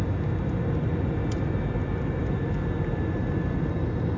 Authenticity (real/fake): real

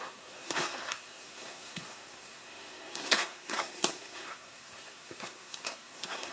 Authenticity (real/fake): fake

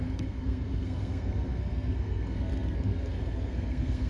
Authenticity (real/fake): fake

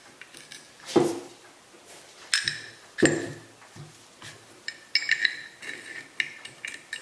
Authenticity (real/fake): real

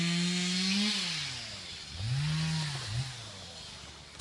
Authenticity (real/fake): real